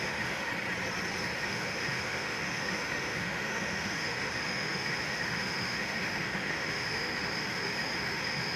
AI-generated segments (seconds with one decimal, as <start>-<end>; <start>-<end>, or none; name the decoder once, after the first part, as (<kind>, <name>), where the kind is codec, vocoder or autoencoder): 0.0-0.5 (autoencoder, DAC-VAE); 1.2-8.6